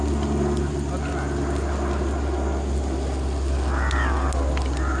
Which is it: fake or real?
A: real